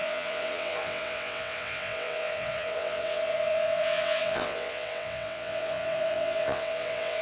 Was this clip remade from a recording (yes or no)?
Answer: yes